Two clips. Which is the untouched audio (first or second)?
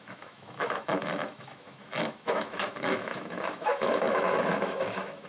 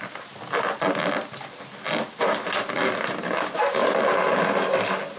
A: second